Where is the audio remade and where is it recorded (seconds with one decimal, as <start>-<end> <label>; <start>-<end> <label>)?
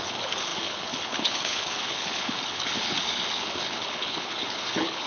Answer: 0.0-5.1 remade